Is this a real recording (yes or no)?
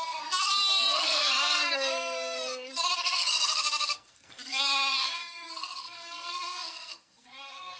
no